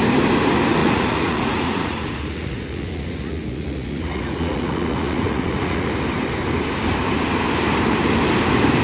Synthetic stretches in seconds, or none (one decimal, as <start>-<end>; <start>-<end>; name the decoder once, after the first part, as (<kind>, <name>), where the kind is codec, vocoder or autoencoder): 0.8-5.9 (vocoder, Vocos)